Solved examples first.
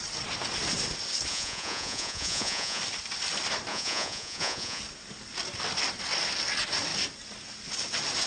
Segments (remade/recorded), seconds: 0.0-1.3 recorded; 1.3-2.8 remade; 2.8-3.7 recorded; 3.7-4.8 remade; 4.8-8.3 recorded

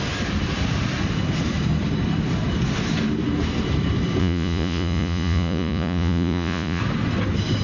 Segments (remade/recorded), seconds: 0.0-4.2 recorded; 4.2-6.8 remade; 6.8-7.6 recorded

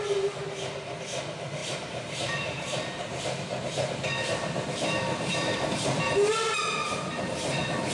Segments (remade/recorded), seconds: 0.0-1.6 recorded; 1.6-5.7 remade; 5.7-6.8 recorded; 6.8-7.9 remade